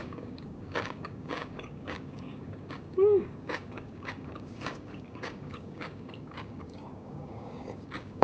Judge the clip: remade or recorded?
remade